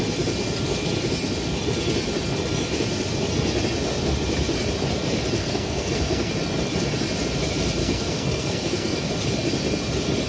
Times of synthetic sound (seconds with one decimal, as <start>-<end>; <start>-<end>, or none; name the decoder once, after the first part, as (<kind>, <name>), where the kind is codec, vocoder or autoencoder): 5.4-6.3 (codec, SNAC); 7.8-9.1